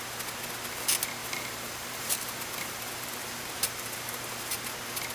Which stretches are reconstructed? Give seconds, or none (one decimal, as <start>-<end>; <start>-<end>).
1.2-4.3